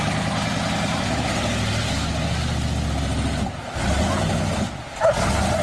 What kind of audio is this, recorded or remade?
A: recorded